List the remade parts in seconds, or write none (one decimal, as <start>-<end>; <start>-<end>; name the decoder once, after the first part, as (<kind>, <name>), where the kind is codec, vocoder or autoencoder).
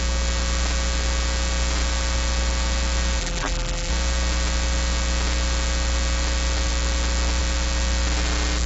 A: 3.2-3.9 (vocoder, BigVGAN v2)